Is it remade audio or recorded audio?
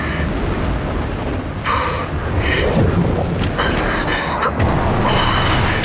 recorded